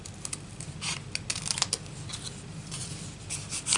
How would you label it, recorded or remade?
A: recorded